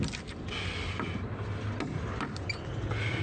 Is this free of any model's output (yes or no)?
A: yes